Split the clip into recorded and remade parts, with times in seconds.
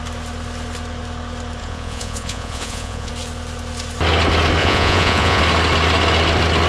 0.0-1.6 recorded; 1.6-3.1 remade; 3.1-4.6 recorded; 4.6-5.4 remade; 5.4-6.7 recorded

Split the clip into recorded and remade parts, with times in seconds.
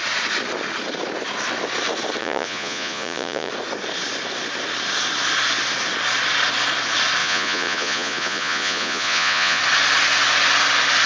0.0-2.2 recorded; 2.2-3.5 remade; 3.5-7.2 recorded; 7.2-9.6 remade; 9.6-11.1 recorded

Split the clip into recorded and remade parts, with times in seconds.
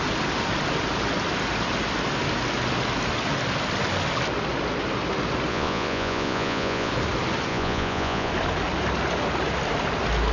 0.0-5.5 recorded; 5.5-6.9 remade; 6.9-7.5 recorded; 7.5-8.3 remade; 8.3-10.3 recorded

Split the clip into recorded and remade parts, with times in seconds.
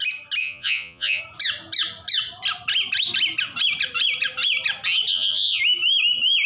0.0-0.4 recorded; 0.4-1.2 remade; 1.2-5.1 recorded; 5.1-5.6 remade; 5.6-6.5 recorded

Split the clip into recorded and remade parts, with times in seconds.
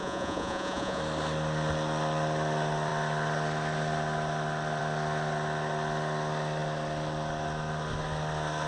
0.0-1.0 remade; 1.0-8.7 recorded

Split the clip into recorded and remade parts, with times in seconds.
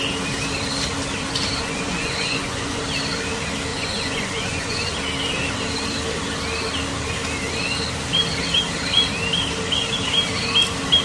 0.0-1.6 recorded; 1.6-2.8 remade; 2.8-3.7 recorded; 3.7-4.9 remade; 4.9-11.0 recorded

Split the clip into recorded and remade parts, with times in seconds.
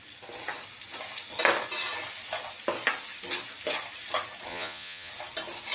0.0-4.5 recorded; 4.5-5.1 remade; 5.1-5.7 recorded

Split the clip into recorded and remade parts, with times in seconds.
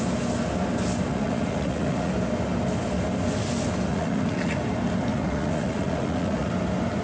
0.0-1.1 recorded; 1.1-2.1 remade; 2.1-3.9 recorded; 3.9-4.6 remade; 4.6-5.1 recorded; 5.1-6.5 remade; 6.5-7.0 recorded